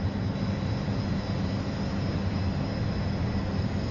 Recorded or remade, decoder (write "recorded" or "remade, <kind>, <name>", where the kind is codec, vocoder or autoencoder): recorded